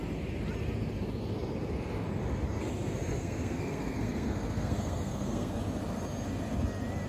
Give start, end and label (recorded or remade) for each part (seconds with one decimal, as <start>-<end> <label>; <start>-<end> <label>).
0.0-3.1 recorded; 3.1-5.6 remade; 5.6-7.1 recorded